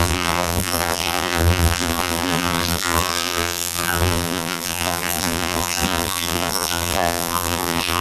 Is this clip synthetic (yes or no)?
yes